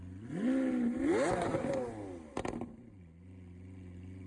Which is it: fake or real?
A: real